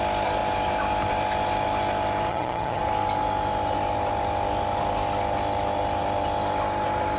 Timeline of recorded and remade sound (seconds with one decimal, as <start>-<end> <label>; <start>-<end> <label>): 0.0-2.3 recorded; 2.3-2.8 remade; 2.8-7.2 recorded